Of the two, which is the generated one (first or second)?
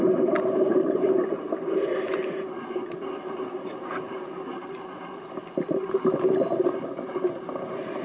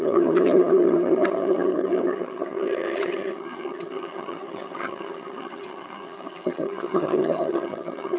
second